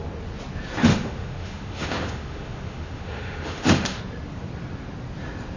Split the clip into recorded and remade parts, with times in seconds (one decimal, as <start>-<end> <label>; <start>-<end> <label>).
0.0-0.8 recorded; 0.8-4.0 remade; 4.0-5.6 recorded